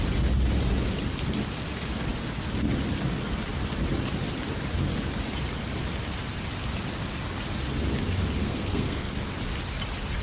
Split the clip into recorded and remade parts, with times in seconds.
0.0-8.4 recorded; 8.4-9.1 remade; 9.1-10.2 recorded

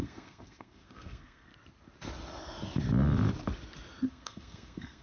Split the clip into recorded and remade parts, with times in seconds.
0.0-1.5 remade; 1.5-4.1 recorded; 4.1-5.0 remade

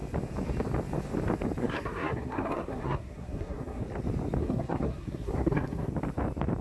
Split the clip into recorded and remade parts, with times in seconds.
0.0-1.6 recorded; 1.6-3.8 remade; 3.8-4.4 recorded; 4.4-5.9 remade; 5.9-6.6 recorded

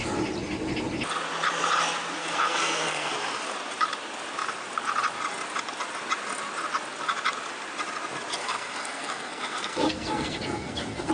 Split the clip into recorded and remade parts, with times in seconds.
0.0-2.2 recorded; 2.2-3.1 remade; 3.1-8.4 recorded; 8.4-11.1 remade

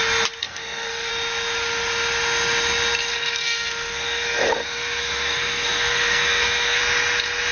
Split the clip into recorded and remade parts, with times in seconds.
0.0-0.4 recorded; 0.4-1.1 remade; 1.1-3.1 recorded; 3.1-6.8 remade; 6.8-7.5 recorded

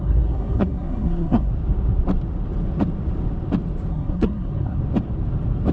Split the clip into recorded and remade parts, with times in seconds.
0.0-1.5 remade; 1.5-3.9 recorded; 3.9-4.8 remade; 4.8-5.7 recorded